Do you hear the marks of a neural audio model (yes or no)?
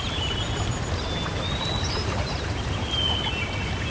no